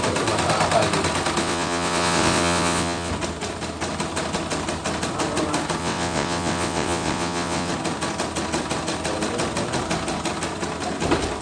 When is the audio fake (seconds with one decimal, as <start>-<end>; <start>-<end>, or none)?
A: 1.4-3.1; 5.8-7.7